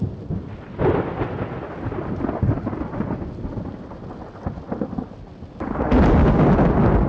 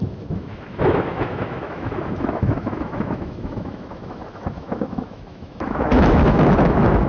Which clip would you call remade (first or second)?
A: second